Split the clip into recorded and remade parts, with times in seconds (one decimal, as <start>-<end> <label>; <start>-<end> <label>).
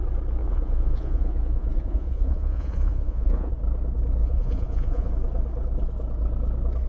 0.0-0.4 recorded; 0.4-3.5 remade; 3.5-4.2 recorded; 4.2-5.1 remade; 5.1-6.9 recorded